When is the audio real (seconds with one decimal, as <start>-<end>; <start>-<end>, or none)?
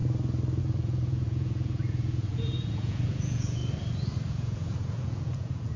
0.0-0.6; 3.6-4.3